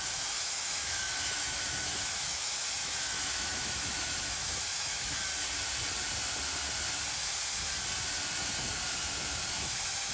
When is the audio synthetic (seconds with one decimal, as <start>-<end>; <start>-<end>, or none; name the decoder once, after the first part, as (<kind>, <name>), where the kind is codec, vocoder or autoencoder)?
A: 0.0-5.3 (autoencoder, DAC-VAE); 9.5-10.1